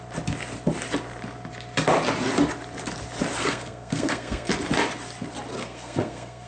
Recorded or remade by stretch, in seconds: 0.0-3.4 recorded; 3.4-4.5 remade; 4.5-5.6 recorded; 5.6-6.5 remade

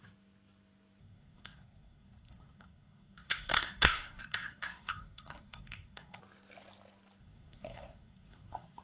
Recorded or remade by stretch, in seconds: 0.0-1.0 recorded; 1.0-6.2 remade; 6.2-7.2 recorded; 7.2-8.8 remade

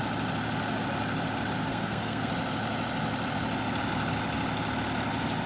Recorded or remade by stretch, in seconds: 0.0-1.7 recorded; 1.7-2.3 remade; 2.3-5.5 recorded

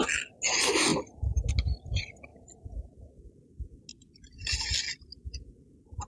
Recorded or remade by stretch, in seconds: 0.0-6.1 recorded

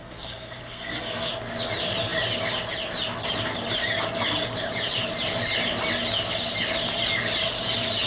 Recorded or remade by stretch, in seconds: 0.0-1.3 remade; 1.3-8.1 recorded

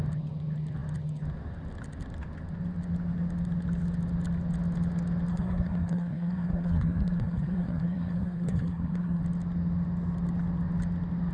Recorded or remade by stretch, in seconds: 0.0-5.3 recorded; 5.3-9.2 remade; 9.2-11.3 recorded

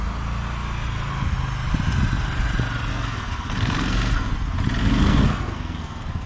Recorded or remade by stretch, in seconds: 0.0-2.9 recorded; 2.9-4.3 remade; 4.3-4.8 recorded; 4.8-6.3 remade